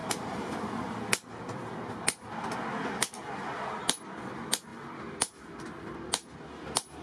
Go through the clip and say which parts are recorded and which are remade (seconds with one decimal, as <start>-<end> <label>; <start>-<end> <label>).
0.0-7.0 recorded